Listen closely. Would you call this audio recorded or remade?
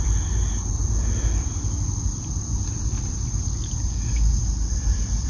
remade